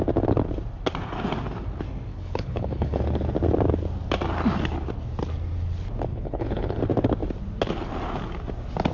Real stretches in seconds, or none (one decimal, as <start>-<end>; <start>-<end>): 0.0-2.1; 3.0-6.1; 6.8-8.9

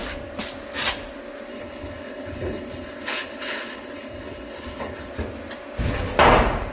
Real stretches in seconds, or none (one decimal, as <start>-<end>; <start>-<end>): 0.0-1.5; 5.1-6.7

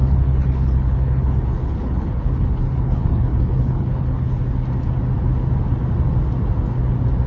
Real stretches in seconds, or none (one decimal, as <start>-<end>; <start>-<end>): 4.4-7.3